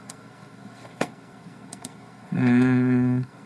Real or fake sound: fake